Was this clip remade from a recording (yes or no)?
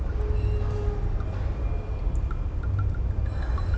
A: no